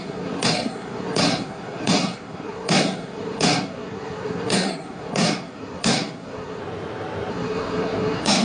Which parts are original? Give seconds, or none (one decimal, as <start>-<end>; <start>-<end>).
6.6-7.3